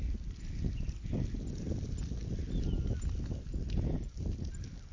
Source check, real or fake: real